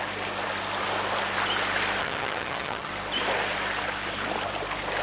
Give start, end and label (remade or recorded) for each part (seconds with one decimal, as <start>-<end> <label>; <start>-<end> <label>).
0.0-2.0 recorded; 2.0-2.9 remade; 2.9-5.0 recorded